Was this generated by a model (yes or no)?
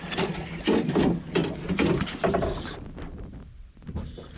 no